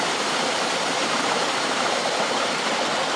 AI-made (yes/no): yes